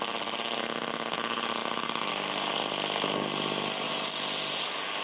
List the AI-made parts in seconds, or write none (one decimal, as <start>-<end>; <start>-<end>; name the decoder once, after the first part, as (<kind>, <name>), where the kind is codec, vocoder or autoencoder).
none